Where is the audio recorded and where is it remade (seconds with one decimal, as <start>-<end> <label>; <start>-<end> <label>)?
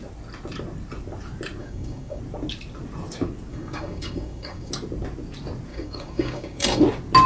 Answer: 0.0-1.6 recorded; 1.6-2.2 remade; 2.2-3.5 recorded; 3.5-4.7 remade; 4.7-5.7 recorded; 5.7-6.8 remade; 6.8-7.3 recorded